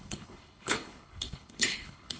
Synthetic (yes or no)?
yes